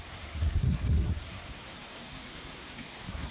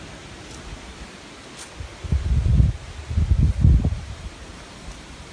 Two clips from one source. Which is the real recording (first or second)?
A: second